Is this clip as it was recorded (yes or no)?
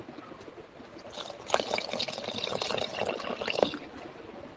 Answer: yes